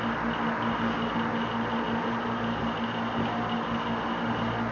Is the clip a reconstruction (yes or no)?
no